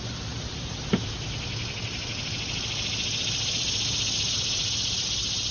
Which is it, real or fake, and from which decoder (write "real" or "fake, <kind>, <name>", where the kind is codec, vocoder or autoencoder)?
real